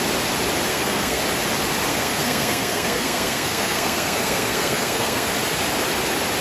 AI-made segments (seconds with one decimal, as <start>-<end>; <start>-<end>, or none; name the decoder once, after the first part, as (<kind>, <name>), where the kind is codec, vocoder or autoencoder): 0.7-1.2 (codec, SNAC); 1.9-5.3